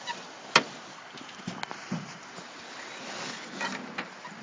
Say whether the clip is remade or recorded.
recorded